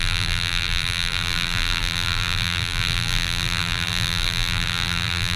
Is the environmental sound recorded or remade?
remade